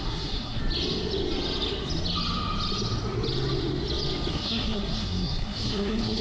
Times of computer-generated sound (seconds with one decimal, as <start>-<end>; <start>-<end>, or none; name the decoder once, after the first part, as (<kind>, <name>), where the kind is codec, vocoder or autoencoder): 0.0-0.6 (codec, SNAC); 4.3-6.2